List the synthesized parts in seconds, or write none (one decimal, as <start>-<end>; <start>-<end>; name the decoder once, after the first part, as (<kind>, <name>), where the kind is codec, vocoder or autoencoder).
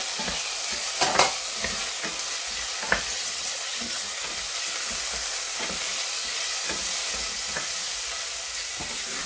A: 3.1-4.2 (vocoder, HiFi-GAN)